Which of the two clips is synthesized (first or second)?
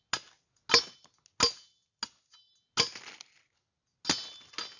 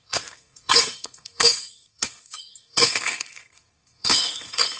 second